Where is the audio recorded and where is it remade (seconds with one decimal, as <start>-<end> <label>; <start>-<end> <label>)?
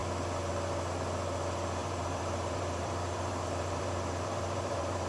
0.0-1.8 recorded; 1.8-5.1 remade